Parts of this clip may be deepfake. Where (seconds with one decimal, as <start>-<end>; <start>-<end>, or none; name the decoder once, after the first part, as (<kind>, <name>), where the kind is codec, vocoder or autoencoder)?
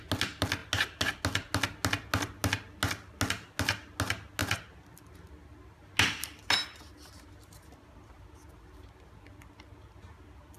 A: none